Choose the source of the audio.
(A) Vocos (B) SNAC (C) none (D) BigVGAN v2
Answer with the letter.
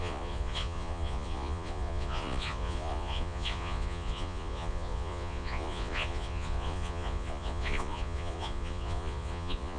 A